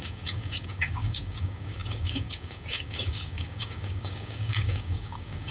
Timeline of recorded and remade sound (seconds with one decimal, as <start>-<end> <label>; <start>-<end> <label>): 0.0-5.5 remade